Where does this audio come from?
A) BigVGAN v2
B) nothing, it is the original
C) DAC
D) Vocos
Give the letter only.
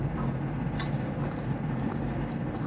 B